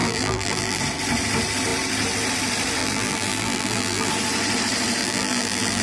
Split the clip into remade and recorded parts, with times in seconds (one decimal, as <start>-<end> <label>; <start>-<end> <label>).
0.0-0.8 remade; 0.8-2.8 recorded; 2.8-4.1 remade; 4.1-5.0 recorded; 5.0-5.8 remade